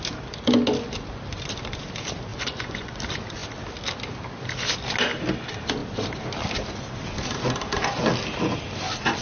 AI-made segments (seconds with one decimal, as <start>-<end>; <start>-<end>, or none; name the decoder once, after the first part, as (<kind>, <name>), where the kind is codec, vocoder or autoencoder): 2.3-3.0 (vocoder, Vocos)